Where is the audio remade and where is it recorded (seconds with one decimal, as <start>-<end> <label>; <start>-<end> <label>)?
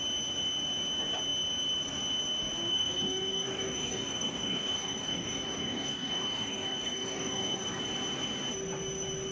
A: 0.0-2.7 recorded; 2.7-7.8 remade; 7.8-9.3 recorded